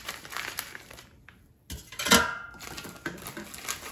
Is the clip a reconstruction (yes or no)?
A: no